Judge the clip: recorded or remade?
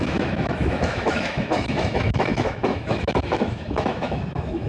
remade